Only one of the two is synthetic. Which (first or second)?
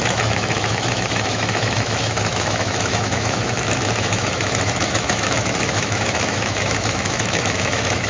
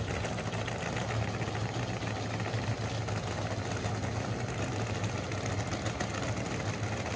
first